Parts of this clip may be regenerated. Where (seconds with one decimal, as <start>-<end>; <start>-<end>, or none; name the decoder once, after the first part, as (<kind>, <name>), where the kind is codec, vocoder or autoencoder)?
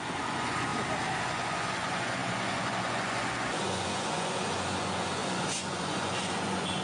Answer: 0.0-0.7 (vocoder, Vocos); 1.2-6.8